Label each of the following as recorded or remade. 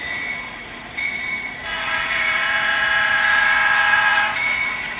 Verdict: remade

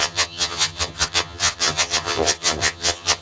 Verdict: remade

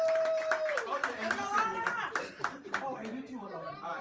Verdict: remade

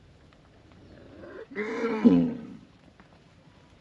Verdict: remade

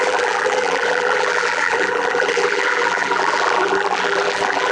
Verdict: remade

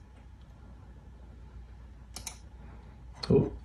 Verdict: recorded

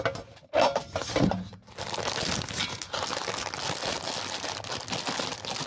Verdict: recorded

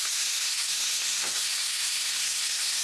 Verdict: remade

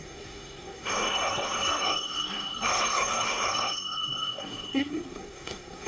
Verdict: remade